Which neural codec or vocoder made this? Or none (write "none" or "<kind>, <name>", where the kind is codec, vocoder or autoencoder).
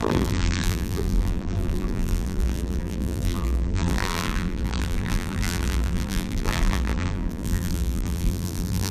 vocoder, BigVGAN v2